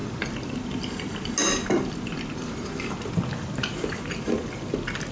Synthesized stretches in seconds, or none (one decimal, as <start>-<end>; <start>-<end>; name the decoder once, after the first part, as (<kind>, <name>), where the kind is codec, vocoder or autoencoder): none